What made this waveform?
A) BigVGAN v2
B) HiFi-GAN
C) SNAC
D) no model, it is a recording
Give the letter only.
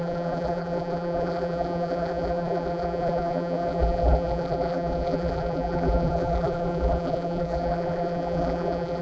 A